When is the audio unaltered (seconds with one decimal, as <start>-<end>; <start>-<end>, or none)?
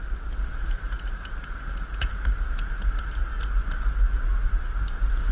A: 0.0-5.3